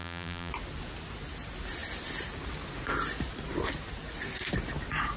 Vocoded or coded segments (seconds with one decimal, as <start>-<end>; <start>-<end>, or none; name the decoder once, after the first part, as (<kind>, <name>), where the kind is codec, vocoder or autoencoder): 0.0-0.5 (vocoder, BigVGAN v2)